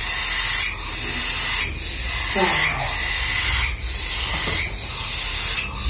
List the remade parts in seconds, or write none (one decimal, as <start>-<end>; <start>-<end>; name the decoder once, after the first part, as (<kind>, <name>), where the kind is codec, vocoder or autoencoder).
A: none

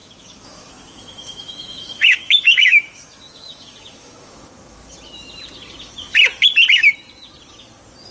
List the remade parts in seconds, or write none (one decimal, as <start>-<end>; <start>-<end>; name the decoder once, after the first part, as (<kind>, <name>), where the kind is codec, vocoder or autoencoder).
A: 0.0-4.9 (autoencoder, DAC-VAE)

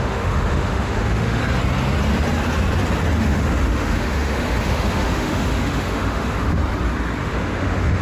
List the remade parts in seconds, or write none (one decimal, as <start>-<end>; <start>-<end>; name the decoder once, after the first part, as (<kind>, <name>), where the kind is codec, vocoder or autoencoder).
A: 0.0-1.4 (autoencoder, DAC-VAE); 3.2-6.6; 7.2-8.0